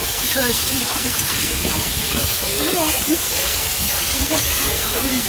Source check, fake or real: fake